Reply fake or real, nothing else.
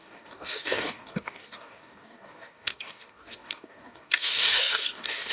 fake